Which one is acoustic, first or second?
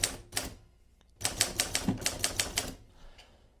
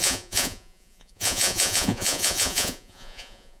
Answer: first